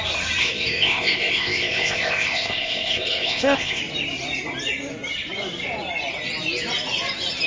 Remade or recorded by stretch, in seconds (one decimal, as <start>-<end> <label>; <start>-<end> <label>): 0.0-0.4 recorded; 0.4-3.8 remade; 3.8-7.5 recorded